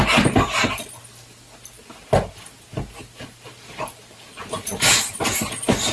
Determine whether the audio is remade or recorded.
recorded